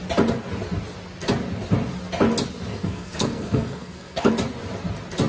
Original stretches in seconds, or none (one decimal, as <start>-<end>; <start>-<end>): 0.0-2.7; 4.3-5.3